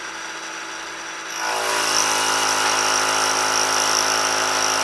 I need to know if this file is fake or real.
real